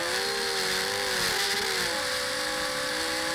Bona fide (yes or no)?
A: yes